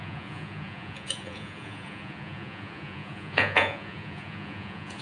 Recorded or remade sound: remade